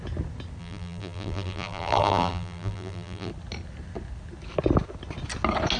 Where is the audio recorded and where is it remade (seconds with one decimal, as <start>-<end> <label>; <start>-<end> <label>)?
0.0-0.6 recorded; 0.6-3.3 remade; 3.3-5.8 recorded